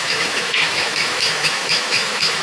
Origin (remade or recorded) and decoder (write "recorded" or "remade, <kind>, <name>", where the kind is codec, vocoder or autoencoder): remade, autoencoder, DAC-VAE